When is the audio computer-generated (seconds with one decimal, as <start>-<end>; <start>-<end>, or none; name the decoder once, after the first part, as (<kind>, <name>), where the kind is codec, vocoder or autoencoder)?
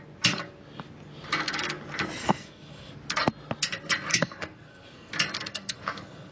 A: 2.2-2.9 (codec, SNAC); 4.1-5.1; 5.5-6.3